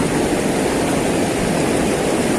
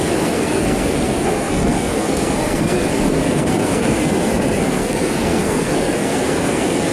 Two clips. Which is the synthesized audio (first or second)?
second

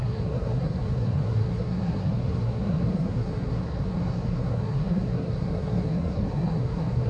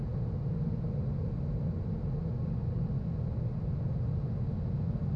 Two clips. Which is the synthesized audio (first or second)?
first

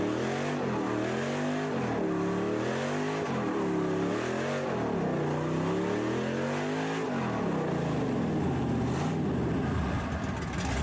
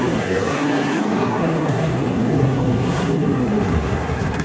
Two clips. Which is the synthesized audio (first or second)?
second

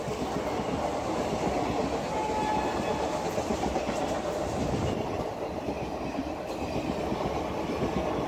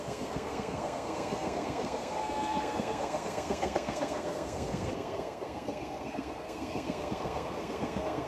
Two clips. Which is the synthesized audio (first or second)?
second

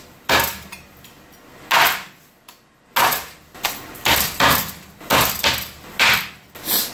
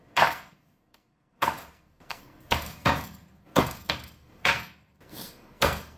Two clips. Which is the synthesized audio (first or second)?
second